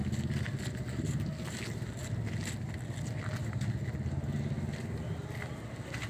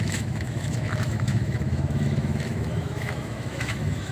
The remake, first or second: second